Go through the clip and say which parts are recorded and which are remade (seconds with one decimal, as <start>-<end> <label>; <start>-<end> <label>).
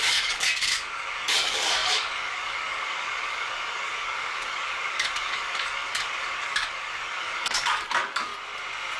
0.0-8.3 remade; 8.3-9.0 recorded